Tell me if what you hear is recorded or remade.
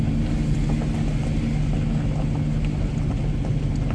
recorded